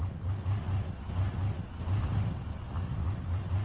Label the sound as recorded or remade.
recorded